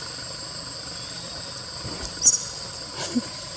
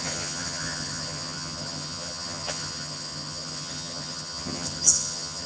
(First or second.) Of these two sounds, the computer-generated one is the second